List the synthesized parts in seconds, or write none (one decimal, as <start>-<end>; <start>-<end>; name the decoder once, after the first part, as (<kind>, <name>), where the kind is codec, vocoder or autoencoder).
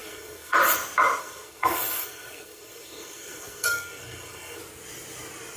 0.0-0.6 (codec, SNAC); 1.2-4.6